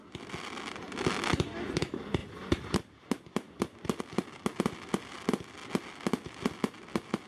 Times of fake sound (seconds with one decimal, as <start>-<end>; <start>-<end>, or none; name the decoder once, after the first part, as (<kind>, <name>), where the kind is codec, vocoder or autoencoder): none